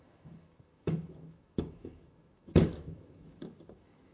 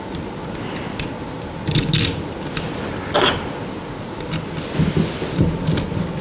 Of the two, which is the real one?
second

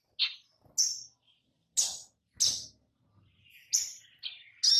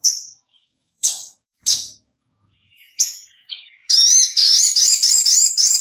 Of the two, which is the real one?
first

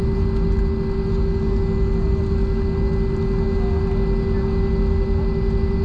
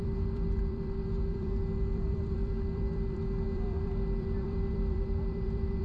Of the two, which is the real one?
first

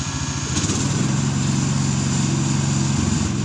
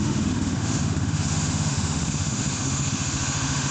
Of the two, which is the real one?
first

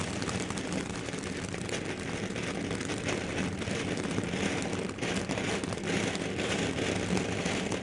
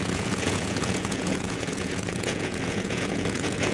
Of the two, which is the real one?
first